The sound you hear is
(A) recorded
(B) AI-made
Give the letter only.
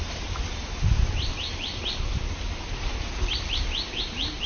A